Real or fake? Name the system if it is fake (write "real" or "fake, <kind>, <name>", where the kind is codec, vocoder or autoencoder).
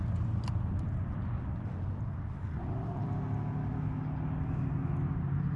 real